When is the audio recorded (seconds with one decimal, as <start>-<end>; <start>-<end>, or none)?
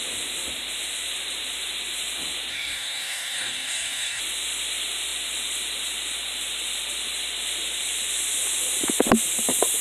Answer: 0.0-2.5; 4.2-9.8